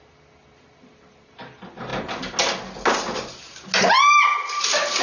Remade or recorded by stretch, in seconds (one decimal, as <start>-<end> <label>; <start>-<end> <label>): 0.0-5.0 recorded